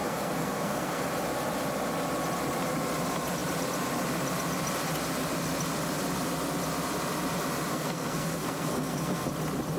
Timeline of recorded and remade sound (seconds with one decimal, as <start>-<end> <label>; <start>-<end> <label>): 0.0-1.1 remade; 1.1-7.7 recorded; 7.7-9.3 remade; 9.3-9.8 recorded